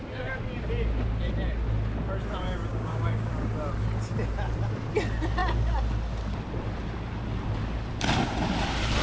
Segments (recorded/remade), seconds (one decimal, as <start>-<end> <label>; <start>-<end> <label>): 0.0-2.7 recorded; 2.7-3.3 remade; 3.3-9.0 recorded